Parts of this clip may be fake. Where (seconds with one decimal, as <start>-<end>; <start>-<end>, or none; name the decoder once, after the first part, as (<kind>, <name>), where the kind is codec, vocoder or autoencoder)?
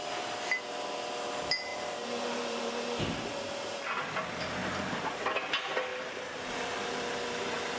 1.7-3.0 (vocoder, BigVGAN v2); 4.6-5.2; 5.9-6.8